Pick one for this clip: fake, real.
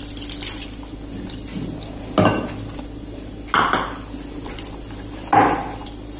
real